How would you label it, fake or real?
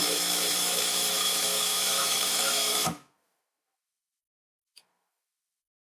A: fake